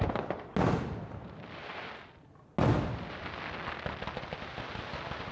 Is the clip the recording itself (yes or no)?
yes